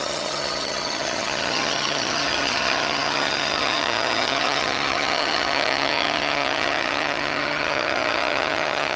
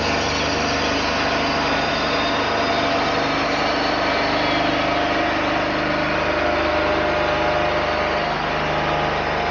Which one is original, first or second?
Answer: second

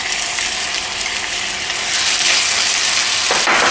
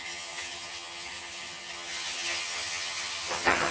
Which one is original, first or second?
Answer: first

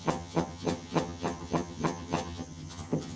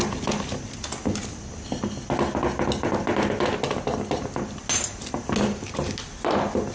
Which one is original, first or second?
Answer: second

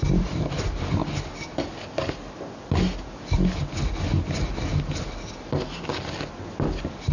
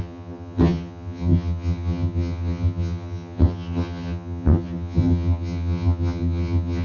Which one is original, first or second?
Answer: first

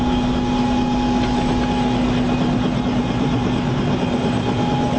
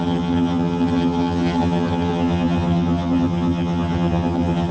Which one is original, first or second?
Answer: first